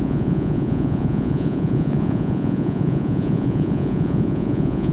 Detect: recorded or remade remade